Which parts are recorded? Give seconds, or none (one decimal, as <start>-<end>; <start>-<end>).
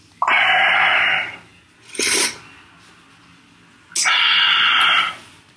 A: 0.0-5.6